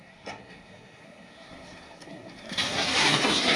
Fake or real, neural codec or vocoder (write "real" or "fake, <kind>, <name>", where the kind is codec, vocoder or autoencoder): fake, codec, SNAC